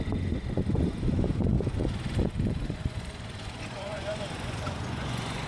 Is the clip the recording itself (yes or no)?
no